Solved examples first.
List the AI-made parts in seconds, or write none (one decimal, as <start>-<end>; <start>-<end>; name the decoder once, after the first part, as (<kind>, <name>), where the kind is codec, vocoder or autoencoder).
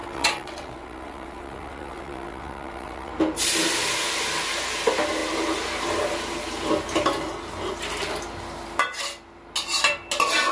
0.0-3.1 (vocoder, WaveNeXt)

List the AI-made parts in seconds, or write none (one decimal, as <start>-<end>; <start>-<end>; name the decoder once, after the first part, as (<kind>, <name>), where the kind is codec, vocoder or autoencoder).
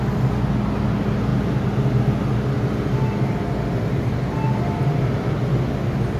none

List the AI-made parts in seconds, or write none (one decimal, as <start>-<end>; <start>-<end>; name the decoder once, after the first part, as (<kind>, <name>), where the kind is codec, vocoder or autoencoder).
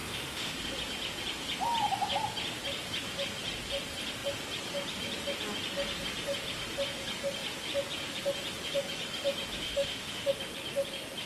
0.0-0.6 (autoencoder, DAC-VAE); 9.6-10.3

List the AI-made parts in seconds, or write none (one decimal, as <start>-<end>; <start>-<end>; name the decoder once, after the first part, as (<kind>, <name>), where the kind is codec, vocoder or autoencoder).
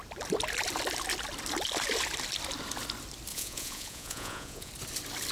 3.3-4.7 (vocoder, Vocos)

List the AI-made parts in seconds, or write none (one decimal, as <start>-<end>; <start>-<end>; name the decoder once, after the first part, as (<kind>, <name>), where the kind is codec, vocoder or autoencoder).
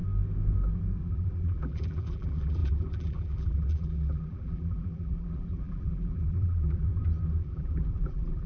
1.0-6.9 (vocoder, BigVGAN v2); 7.4-8.5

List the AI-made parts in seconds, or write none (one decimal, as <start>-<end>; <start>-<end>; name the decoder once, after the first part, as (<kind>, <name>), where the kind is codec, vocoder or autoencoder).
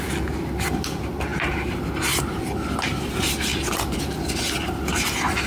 none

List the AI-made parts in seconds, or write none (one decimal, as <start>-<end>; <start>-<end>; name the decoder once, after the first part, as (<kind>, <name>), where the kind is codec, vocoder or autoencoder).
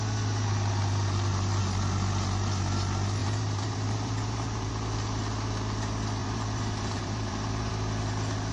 3.2-4.7 (vocoder, BigVGAN v2); 6.2-7.7